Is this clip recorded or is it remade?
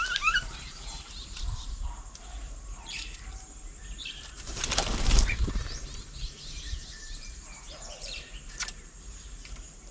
remade